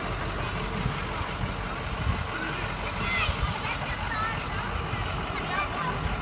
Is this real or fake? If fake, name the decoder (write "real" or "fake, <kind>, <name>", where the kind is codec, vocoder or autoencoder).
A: real